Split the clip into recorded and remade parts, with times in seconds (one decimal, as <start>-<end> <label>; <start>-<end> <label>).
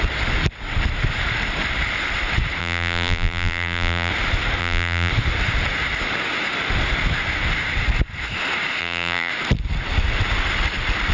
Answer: 0.0-2.6 recorded; 2.6-4.1 remade; 4.1-4.6 recorded; 4.6-5.1 remade; 5.1-8.8 recorded; 8.8-9.3 remade; 9.3-11.1 recorded